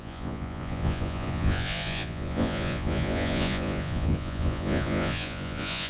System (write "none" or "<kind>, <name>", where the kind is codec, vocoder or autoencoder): vocoder, Vocos